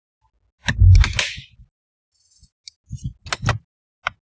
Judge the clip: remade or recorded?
recorded